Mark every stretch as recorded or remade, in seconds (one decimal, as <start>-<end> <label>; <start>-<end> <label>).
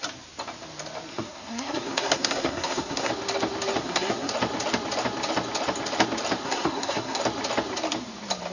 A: 0.0-1.1 recorded; 1.1-3.1 remade; 3.1-3.8 recorded; 3.8-4.3 remade; 4.3-6.4 recorded; 6.4-7.2 remade; 7.2-8.5 recorded